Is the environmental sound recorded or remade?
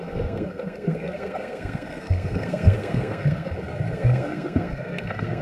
remade